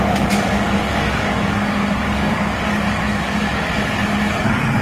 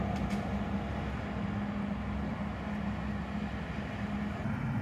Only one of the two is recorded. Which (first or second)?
second